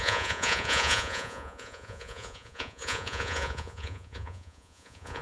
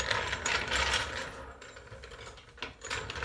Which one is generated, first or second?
first